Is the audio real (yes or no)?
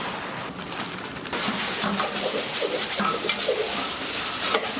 yes